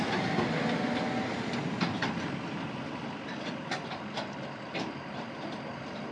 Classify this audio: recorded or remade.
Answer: remade